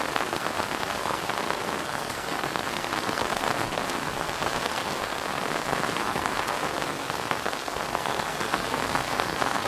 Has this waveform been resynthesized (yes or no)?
yes